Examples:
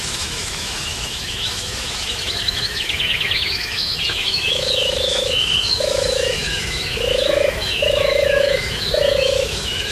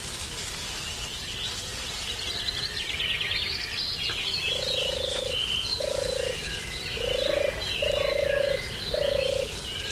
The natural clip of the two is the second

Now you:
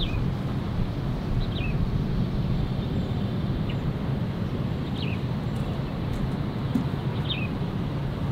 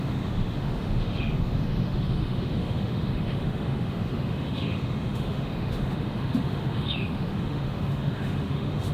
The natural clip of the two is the first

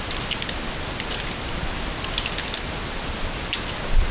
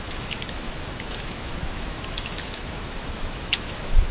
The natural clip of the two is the first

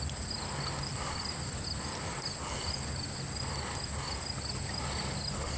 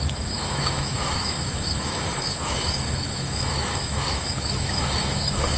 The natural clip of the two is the first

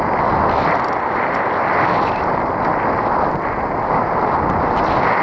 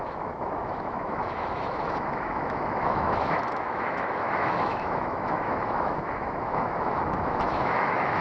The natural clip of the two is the first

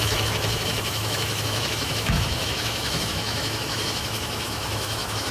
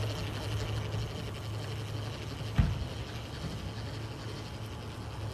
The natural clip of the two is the second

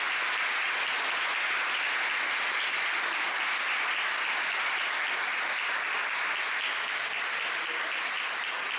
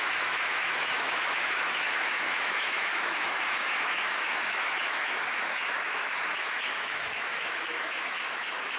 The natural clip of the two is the first